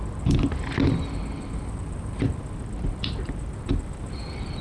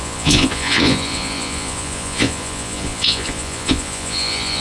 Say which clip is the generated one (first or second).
second